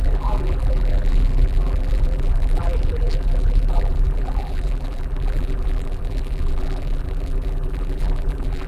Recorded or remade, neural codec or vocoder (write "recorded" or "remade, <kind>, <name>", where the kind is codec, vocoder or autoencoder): remade, vocoder, BigVGAN v2